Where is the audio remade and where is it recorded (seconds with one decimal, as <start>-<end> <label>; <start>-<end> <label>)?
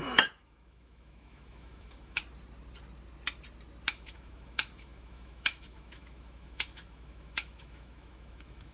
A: 0.0-2.2 remade; 2.2-3.9 recorded; 3.9-8.7 remade